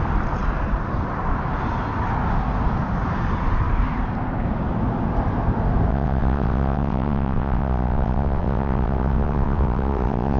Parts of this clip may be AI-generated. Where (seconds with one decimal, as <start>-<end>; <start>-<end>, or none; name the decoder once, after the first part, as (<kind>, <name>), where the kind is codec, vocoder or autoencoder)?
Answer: 5.9-10.4 (vocoder, WaveNeXt)